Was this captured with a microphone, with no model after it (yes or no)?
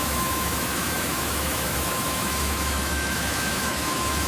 no